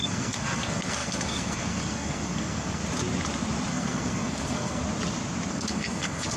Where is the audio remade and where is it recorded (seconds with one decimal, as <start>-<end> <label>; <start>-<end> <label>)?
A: 0.0-2.8 remade; 2.8-3.7 recorded; 3.7-4.8 remade; 4.8-5.5 recorded; 5.5-6.4 remade